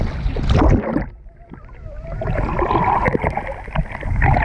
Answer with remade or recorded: recorded